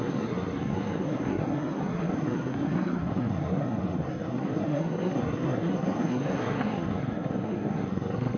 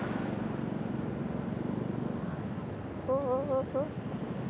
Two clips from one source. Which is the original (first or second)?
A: second